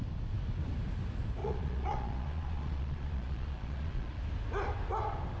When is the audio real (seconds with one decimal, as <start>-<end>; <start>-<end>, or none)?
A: 0.0-1.4; 4.2-5.4